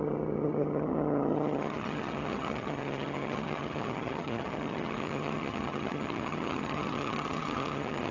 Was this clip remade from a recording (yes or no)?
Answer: yes